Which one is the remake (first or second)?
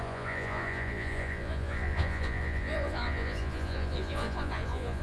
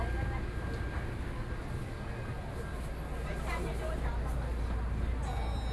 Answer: first